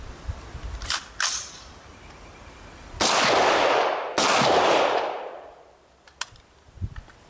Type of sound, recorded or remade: recorded